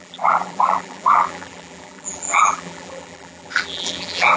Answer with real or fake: fake